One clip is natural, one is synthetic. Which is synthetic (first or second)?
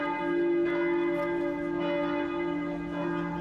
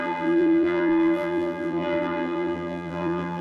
second